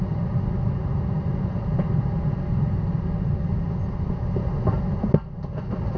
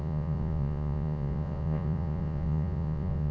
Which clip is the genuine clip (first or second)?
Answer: first